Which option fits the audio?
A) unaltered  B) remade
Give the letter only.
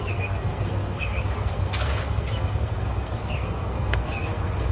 B